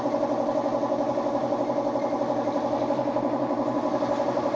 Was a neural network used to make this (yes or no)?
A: no